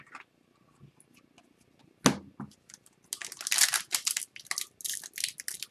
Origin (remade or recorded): recorded